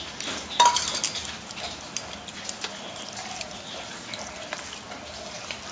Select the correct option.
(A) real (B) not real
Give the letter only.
A